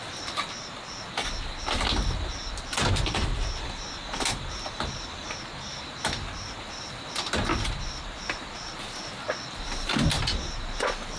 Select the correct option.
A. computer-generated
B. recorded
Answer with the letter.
B